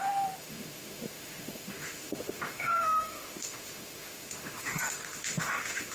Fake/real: fake